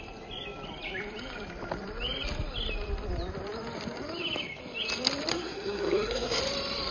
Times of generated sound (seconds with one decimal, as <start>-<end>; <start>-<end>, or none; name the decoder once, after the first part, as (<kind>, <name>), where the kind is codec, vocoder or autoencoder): 5.3-6.4 (codec, SNAC)